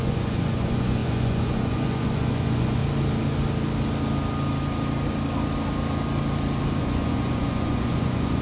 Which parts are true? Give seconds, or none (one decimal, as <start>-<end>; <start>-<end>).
2.8-6.8